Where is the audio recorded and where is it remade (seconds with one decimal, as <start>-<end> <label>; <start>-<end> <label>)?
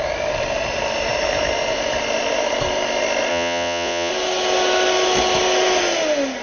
0.0-3.3 recorded; 3.3-4.1 remade; 4.1-6.4 recorded